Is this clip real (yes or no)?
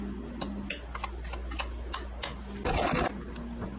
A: yes